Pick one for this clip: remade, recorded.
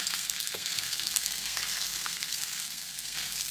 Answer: remade